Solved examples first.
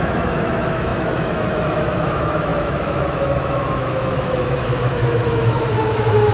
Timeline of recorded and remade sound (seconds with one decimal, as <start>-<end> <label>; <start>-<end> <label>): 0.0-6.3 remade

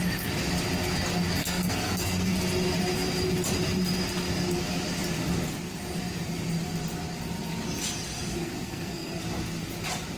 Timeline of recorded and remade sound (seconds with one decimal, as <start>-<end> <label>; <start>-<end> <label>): 0.0-1.4 recorded; 1.4-2.3 remade; 2.3-8.3 recorded; 8.3-9.2 remade; 9.2-10.2 recorded

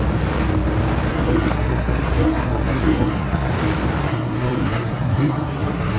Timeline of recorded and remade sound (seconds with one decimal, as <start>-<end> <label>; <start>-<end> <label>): 0.0-1.1 recorded; 1.1-3.5 remade; 3.5-4.0 recorded; 4.0-6.0 remade